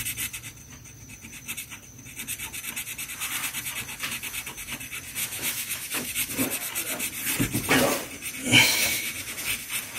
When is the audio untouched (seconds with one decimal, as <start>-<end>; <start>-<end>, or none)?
0.0-5.2; 6.3-8.4; 9.4-10.0